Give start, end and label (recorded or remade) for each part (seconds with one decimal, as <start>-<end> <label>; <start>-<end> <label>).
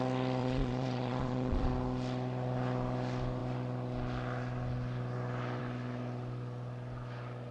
0.0-0.4 recorded; 0.4-1.7 remade; 1.7-7.5 recorded